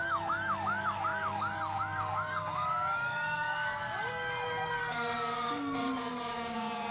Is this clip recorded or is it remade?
remade